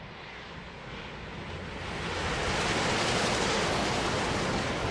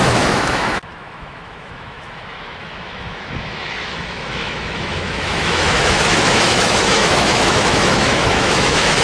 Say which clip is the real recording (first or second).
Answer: first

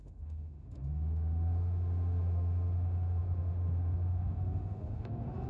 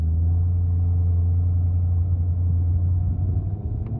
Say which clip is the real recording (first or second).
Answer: second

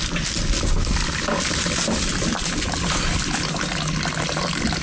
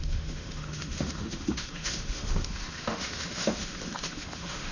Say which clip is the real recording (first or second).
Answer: first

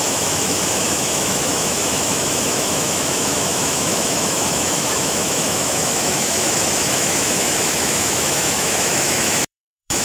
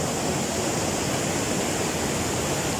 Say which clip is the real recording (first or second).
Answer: second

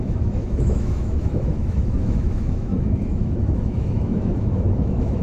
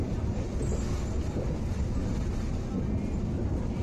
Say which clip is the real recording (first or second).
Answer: second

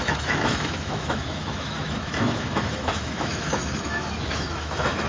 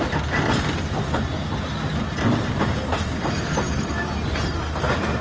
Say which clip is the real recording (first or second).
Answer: second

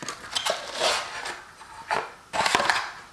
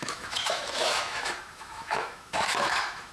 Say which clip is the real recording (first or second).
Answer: first